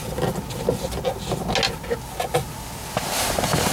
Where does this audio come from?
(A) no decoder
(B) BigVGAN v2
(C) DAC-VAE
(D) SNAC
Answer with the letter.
A